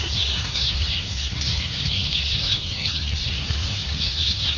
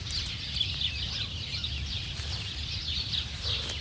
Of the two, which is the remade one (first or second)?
first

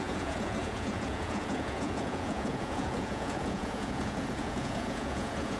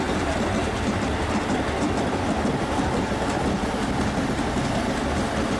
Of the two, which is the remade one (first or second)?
first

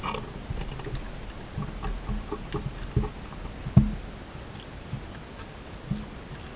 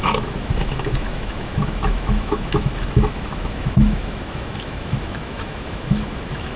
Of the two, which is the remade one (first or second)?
second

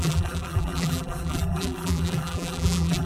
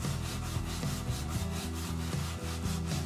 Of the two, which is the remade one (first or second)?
first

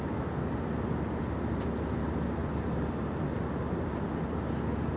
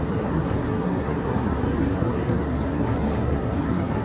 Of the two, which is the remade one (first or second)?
second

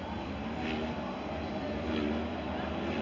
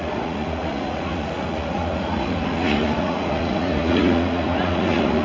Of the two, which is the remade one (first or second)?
second